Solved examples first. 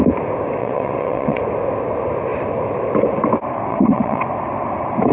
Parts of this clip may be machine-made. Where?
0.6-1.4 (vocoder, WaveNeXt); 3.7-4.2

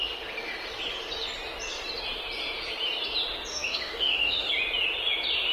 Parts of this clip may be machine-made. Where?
3.5-4.5 (autoencoder, DAC-VAE)

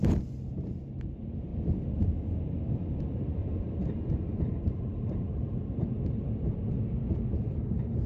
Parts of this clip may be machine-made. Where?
0.0-1.5 (vocoder, BigVGAN v2); 3.0-8.1

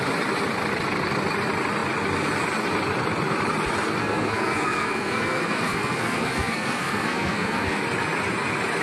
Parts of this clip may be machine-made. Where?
4.0-7.8 (codec, SNAC)

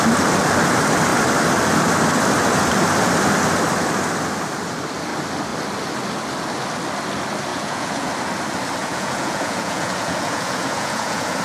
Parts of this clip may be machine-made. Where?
7.5-8.1 (vocoder, Vocos); 8.8-11.4

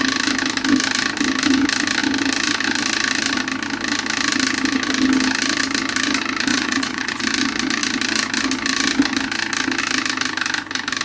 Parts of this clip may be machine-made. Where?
6.5-7.2 (vocoder, Vocos)

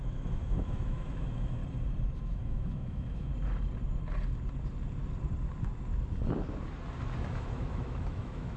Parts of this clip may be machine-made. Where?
0.0-1.6 (autoencoder, DAC-VAE); 2.2-3.3; 7.3-8.6

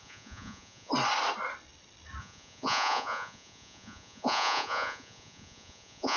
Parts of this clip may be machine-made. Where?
0.0-0.9 (vocoder, Vocos); 2.2-6.2